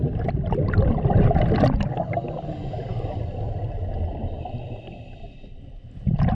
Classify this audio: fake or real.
real